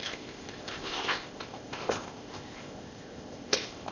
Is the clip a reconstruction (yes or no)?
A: yes